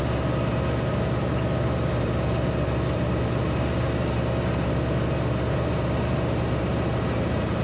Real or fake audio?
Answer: real